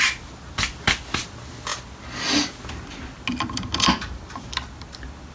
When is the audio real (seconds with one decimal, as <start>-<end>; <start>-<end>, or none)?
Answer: 0.0-5.3